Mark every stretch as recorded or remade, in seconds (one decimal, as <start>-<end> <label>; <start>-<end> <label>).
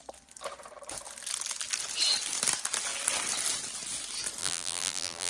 0.0-4.4 recorded; 4.4-5.3 remade